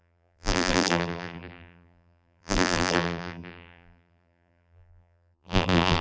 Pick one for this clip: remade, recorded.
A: remade